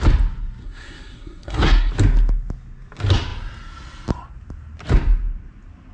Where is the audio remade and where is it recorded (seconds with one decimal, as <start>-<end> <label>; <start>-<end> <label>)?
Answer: 0.0-0.6 recorded; 0.6-1.9 remade; 1.9-5.9 recorded